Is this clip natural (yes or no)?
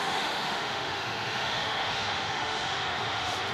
no